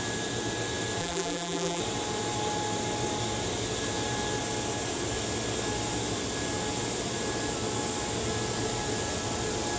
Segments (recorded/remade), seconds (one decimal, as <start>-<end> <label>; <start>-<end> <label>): 0.0-1.0 recorded; 1.0-1.8 remade; 1.8-9.8 recorded